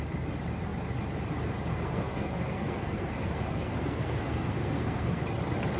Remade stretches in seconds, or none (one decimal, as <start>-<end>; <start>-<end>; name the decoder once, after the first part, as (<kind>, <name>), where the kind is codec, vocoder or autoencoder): 1.7-5.2 (codec, SNAC)